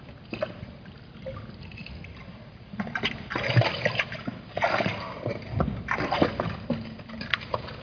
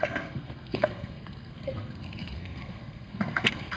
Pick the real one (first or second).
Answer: first